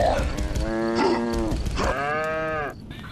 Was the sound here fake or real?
real